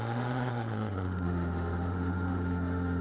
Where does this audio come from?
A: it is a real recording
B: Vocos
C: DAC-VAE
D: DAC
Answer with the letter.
C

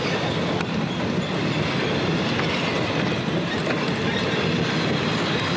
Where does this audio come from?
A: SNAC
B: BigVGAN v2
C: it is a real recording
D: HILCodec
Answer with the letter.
C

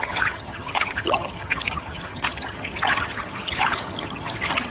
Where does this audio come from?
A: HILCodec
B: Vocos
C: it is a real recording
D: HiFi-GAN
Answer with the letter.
D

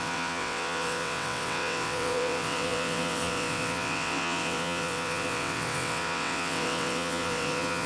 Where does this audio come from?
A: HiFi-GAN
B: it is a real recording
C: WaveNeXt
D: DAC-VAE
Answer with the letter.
C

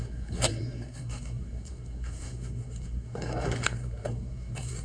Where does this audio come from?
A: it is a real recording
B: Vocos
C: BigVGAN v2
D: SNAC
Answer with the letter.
D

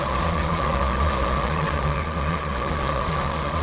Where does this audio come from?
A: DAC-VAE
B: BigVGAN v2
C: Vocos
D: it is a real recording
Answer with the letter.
C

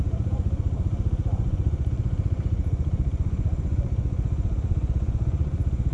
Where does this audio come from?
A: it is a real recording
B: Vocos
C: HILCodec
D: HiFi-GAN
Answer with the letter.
B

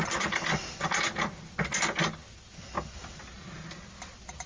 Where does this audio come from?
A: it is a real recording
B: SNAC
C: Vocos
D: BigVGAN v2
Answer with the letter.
A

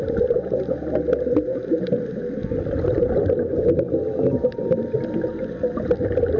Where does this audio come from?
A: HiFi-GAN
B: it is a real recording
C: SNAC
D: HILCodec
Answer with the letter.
B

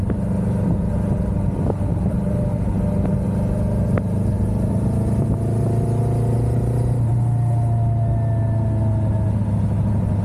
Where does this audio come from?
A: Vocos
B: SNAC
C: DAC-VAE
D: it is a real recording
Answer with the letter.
D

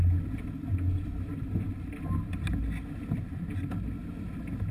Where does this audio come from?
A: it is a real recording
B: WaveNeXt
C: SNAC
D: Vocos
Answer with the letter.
A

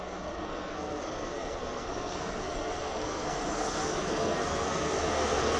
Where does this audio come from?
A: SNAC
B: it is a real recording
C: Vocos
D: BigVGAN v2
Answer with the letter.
A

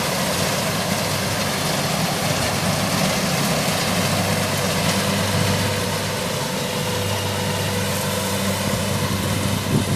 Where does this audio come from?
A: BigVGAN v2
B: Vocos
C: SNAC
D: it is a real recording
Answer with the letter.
D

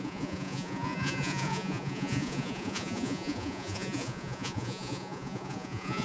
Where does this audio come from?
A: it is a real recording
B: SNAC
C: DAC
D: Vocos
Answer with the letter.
D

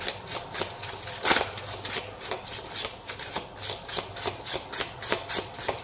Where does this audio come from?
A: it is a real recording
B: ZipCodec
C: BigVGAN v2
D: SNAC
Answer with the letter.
A